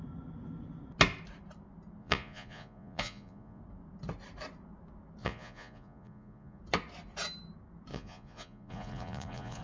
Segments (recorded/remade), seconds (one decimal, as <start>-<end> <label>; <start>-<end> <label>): 0.0-2.0 recorded; 2.0-3.6 remade; 3.6-5.2 recorded; 5.2-6.6 remade; 6.6-7.9 recorded; 7.9-9.6 remade